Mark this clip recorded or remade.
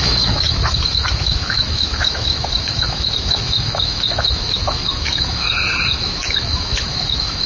remade